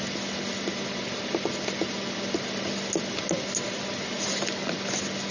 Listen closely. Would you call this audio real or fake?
real